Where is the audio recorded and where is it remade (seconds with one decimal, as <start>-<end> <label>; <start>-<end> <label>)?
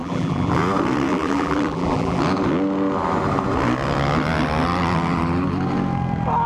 0.0-0.6 remade; 0.6-1.1 recorded; 1.1-2.2 remade; 2.2-6.5 recorded